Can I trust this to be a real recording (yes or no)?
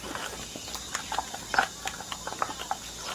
yes